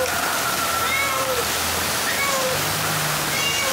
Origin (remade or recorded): recorded